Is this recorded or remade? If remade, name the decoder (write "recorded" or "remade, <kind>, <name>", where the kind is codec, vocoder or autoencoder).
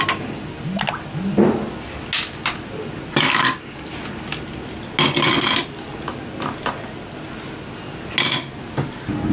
recorded